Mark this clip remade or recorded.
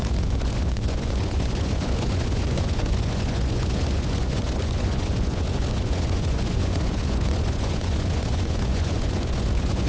remade